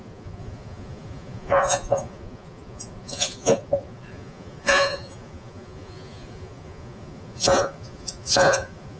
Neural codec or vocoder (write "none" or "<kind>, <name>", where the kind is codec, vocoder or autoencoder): vocoder, Vocos